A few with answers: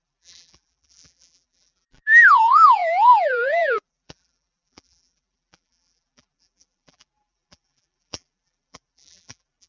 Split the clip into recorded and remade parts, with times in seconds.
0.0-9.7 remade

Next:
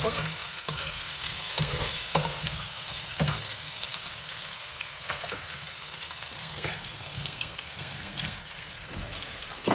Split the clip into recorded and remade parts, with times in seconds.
0.0-9.7 remade

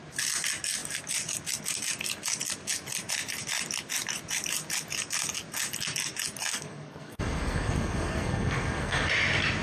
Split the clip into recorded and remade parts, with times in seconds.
0.0-6.5 recorded; 6.5-9.1 remade; 9.1-9.6 recorded

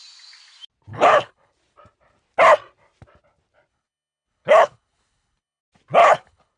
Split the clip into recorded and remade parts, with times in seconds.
0.0-0.9 recorded; 0.9-1.5 remade; 1.5-3.7 recorded; 3.7-5.6 remade; 5.6-6.0 recorded; 6.0-6.6 remade

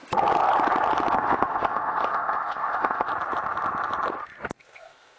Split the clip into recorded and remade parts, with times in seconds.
0.0-1.1 recorded; 1.1-3.1 remade; 3.1-4.6 recorded; 4.6-5.2 remade